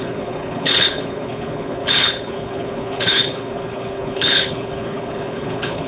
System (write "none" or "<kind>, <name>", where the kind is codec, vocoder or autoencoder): codec, HILCodec